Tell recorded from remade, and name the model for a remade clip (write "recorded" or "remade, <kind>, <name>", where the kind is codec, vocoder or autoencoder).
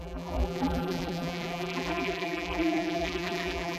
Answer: remade, vocoder, BigVGAN v2